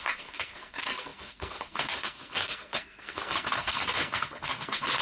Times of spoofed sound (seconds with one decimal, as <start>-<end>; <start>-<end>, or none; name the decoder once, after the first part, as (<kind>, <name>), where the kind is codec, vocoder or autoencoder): 0.0-5.0 (codec, SNAC)